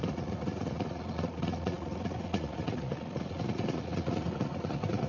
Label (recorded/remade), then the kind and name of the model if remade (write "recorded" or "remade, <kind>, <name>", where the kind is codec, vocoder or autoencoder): remade, vocoder, Vocos